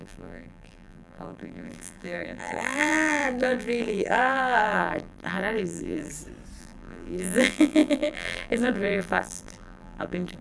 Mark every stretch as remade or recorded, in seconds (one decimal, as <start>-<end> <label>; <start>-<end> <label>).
0.0-6.1 remade; 6.1-6.6 recorded; 6.6-10.4 remade